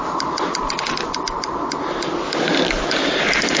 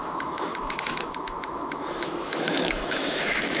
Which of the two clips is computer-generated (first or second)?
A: second